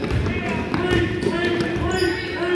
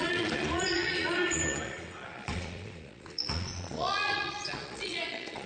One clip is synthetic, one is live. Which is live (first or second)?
first